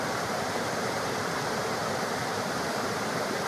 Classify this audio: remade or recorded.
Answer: remade